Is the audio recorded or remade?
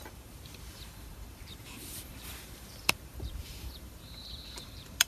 remade